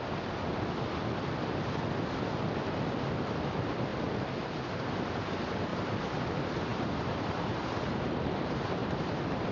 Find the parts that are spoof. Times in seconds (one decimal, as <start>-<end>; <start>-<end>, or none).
5.7-6.3; 6.7-8.2; 8.8-9.5